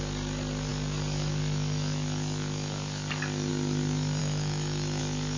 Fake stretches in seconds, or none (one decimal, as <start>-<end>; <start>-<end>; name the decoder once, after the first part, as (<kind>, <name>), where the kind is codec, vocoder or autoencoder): 4.2-5.0 (autoencoder, DAC-VAE)